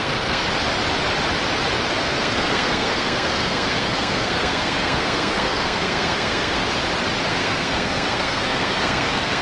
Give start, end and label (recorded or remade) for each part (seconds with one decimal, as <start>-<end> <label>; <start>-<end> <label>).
0.0-0.4 remade; 0.4-2.0 recorded; 2.0-6.6 remade; 6.6-7.3 recorded; 7.3-9.4 remade